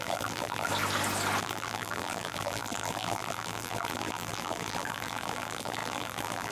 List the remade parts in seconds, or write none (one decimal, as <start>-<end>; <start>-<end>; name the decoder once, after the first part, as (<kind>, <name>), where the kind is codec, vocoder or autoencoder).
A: 0.0-0.7 (vocoder, BigVGAN v2); 1.4-6.5